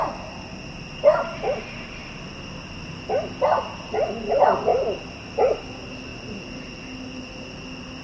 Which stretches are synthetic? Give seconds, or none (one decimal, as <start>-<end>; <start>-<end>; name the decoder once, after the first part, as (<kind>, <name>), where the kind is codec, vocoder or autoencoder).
none